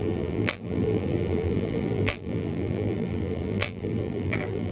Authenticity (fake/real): fake